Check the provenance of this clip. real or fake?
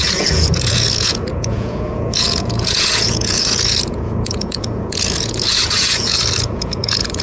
fake